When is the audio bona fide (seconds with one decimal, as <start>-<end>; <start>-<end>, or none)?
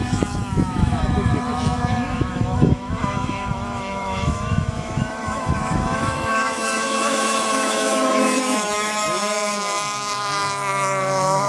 none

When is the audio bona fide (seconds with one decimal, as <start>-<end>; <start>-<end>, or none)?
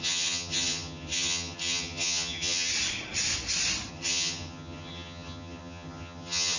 2.7-3.9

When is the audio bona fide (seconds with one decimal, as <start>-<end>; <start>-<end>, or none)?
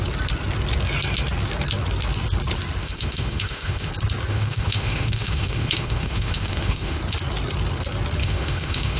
0.0-2.8; 3.9-4.3; 7.0-8.2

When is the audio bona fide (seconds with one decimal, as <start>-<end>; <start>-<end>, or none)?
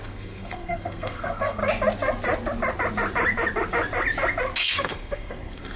1.6-4.6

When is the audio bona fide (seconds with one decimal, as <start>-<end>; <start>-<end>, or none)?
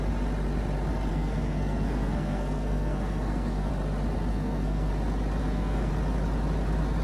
0.0-1.1; 3.7-4.3; 4.9-5.4; 5.9-7.0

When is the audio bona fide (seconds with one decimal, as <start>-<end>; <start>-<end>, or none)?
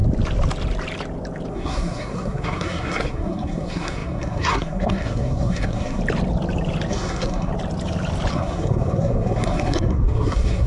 0.0-1.5; 6.0-6.9; 7.5-8.3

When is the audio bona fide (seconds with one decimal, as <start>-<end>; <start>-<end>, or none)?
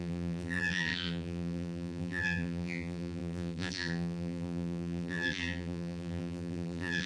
none